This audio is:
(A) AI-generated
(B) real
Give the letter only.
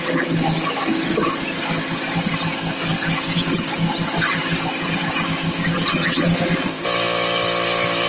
B